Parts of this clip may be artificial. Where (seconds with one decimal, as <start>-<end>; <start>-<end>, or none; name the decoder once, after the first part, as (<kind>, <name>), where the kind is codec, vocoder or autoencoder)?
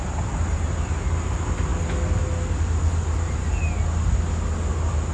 none